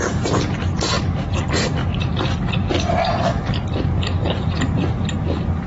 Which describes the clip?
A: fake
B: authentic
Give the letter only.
B